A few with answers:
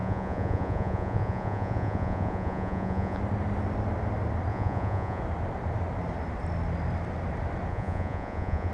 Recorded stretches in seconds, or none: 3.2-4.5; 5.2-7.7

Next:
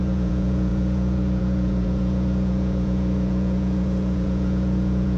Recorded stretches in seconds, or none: none

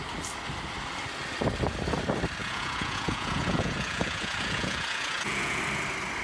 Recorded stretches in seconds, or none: 0.0-2.4; 5.6-6.2

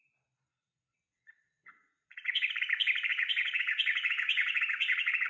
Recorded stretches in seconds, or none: 0.0-0.5; 2.5-3.1

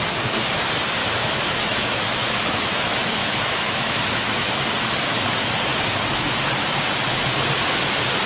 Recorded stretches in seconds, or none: 0.0-1.0; 4.5-8.3

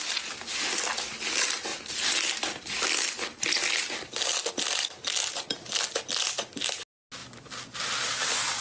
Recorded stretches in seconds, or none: 0.0-8.6

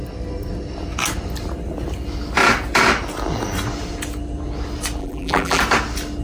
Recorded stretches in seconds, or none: 0.0-5.0; 5.6-6.2